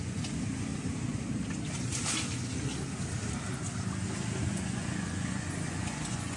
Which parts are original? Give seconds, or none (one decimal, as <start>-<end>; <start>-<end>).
0.7-4.5